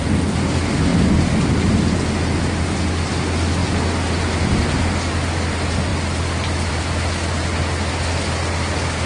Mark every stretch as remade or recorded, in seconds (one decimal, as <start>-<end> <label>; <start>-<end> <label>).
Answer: 0.0-9.1 recorded